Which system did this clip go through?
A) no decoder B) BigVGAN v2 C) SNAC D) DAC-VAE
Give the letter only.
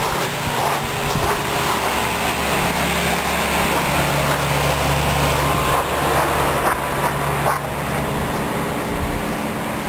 A